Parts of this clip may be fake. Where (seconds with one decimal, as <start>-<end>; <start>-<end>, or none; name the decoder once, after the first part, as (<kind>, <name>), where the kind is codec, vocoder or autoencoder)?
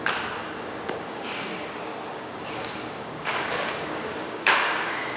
0.4-1.7 (codec, DAC); 2.1-5.2